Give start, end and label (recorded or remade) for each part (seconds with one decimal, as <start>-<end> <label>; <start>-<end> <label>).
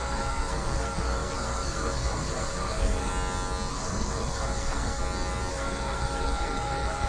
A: 0.0-3.1 remade; 3.1-3.7 recorded; 3.7-5.0 remade; 5.0-5.5 recorded; 5.5-7.1 remade